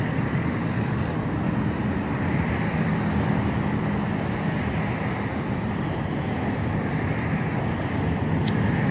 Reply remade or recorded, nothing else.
recorded